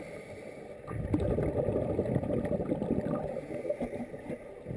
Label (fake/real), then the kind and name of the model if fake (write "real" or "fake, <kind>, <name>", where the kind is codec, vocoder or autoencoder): real